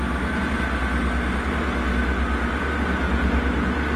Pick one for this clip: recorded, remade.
recorded